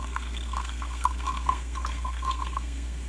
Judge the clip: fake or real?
fake